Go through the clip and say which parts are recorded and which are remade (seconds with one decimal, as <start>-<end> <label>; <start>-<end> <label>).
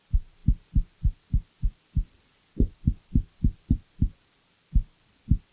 0.0-5.5 recorded